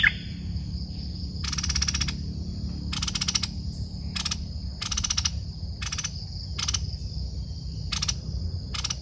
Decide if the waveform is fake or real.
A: real